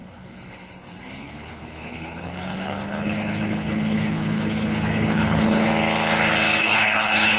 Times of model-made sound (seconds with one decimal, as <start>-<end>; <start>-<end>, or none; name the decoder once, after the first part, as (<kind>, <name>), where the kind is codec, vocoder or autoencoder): 0.0-5.7 (codec, HILCodec); 6.6-7.4